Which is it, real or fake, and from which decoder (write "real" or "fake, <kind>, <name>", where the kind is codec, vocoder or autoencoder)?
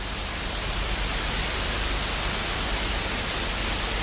real